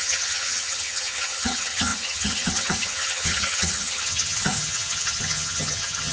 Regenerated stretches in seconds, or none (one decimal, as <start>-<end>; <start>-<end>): 0.0-6.1